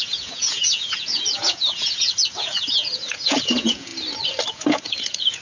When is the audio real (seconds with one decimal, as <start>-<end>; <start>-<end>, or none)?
3.9-4.5